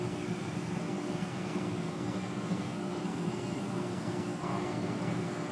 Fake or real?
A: fake